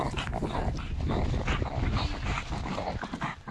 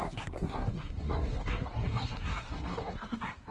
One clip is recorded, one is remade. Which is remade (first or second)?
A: second